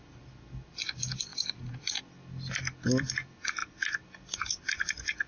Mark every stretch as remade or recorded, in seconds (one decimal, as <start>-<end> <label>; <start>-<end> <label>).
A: 0.0-1.3 recorded; 1.3-2.0 remade; 2.0-5.3 recorded